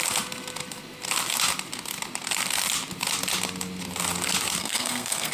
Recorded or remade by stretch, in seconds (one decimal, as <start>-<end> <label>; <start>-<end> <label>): 0.0-4.6 recorded; 4.6-5.3 remade